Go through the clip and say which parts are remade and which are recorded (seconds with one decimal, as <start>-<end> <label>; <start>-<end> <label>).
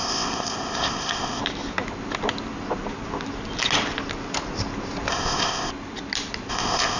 0.0-1.4 remade; 1.4-5.1 recorded; 5.1-5.7 remade; 5.7-6.5 recorded; 6.5-7.0 remade